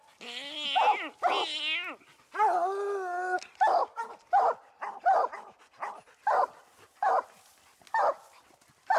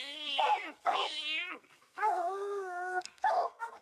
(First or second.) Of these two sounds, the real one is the first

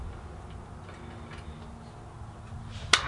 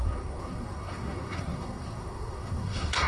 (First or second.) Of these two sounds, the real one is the first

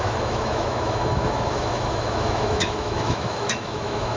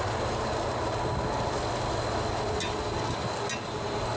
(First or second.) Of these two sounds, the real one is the second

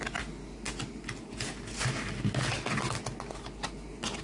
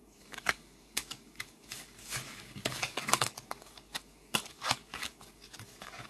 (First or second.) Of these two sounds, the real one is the first